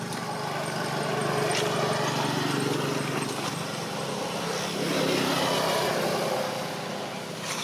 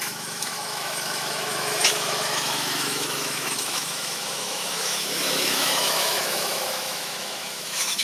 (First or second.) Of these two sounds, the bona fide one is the first